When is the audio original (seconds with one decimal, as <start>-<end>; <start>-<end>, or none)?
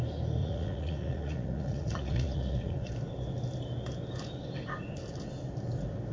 0.0-0.4; 2.9-6.1